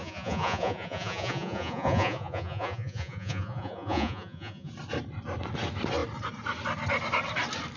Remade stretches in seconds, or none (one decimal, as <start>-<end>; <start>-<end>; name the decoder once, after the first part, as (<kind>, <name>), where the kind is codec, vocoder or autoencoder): 0.0-4.7 (vocoder, Vocos)